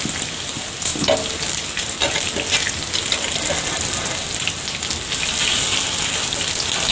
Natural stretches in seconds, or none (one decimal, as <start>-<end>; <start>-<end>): 0.0-6.9